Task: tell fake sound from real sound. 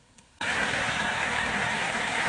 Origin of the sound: fake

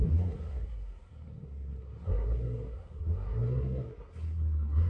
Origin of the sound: fake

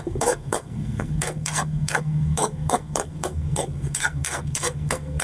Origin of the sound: fake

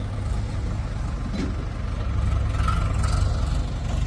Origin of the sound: real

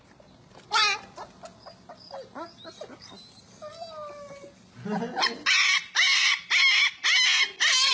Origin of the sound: real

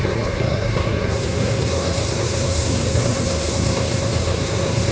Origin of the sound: fake